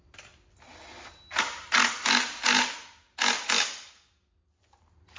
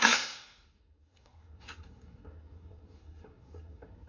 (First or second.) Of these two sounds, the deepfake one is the second